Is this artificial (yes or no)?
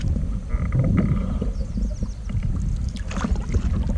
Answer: no